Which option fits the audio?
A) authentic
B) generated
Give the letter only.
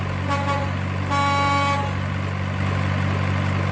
A